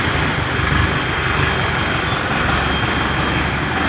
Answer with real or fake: real